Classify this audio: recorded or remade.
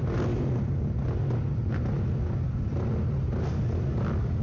recorded